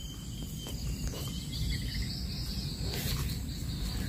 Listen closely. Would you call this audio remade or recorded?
recorded